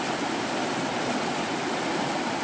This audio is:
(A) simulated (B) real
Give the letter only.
B